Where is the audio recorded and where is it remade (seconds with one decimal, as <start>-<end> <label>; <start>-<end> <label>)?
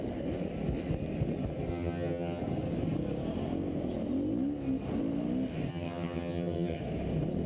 0.0-1.7 recorded; 1.7-2.4 remade; 2.4-5.7 recorded; 5.7-6.8 remade; 6.8-7.5 recorded